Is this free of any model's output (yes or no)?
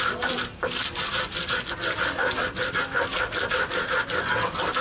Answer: yes